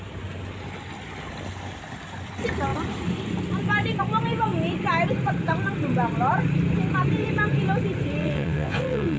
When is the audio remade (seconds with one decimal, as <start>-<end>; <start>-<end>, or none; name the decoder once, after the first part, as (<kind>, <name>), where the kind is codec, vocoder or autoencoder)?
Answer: 8.2-9.2 (vocoder, WaveNeXt)